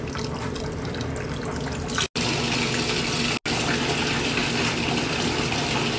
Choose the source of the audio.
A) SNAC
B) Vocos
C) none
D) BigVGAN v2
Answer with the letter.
C